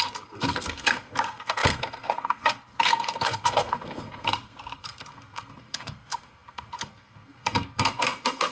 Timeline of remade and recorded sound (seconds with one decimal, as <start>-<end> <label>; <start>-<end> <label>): 0.0-8.5 remade